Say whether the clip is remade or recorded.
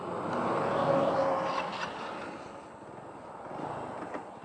recorded